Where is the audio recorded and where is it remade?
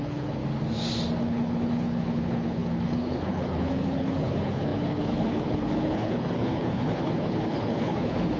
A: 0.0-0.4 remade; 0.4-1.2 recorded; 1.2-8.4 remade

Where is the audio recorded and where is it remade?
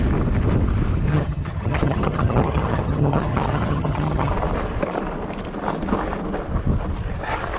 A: 0.0-1.1 recorded; 1.1-4.3 remade; 4.3-7.6 recorded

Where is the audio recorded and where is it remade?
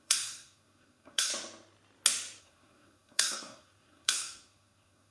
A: 0.0-1.3 remade; 1.3-2.4 recorded; 2.4-5.1 remade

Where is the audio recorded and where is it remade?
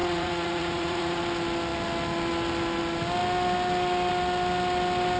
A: 0.0-1.2 remade; 1.2-5.2 recorded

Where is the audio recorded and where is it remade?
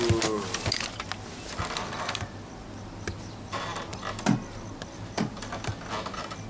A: 0.0-6.5 recorded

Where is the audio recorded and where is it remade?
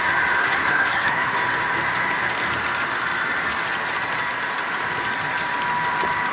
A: 0.0-0.4 recorded; 0.4-1.4 remade; 1.4-6.3 recorded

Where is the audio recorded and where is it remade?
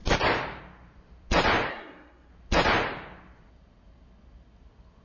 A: 0.0-1.7 recorded; 1.7-2.3 remade; 2.3-5.0 recorded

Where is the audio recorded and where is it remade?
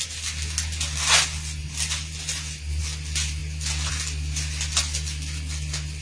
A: 0.0-6.0 recorded